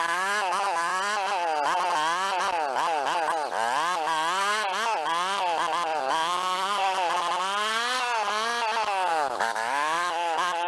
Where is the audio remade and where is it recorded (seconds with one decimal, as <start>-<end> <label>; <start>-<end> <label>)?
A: 0.0-0.9 remade; 0.9-6.0 recorded; 6.0-6.8 remade; 6.8-9.1 recorded; 9.1-10.7 remade